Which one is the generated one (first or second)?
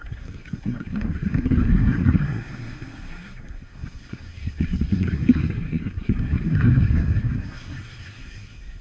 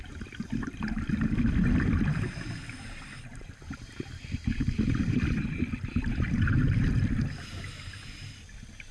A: first